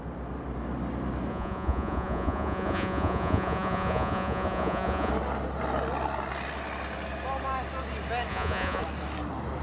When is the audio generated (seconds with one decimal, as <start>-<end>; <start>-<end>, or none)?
1.3-5.1; 8.3-8.8